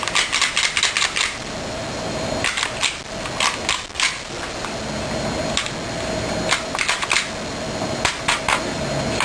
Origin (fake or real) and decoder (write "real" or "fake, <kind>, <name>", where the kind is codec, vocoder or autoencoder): real